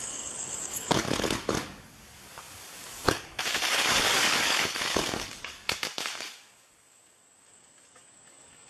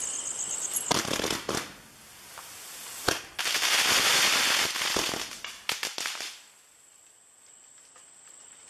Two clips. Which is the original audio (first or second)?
second